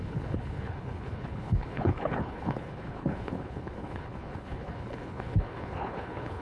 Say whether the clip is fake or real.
fake